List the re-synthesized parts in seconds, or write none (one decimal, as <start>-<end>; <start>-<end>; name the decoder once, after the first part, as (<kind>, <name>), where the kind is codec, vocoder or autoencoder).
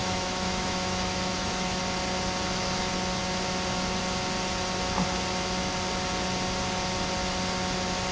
0.0-1.8 (autoencoder, DAC-VAE)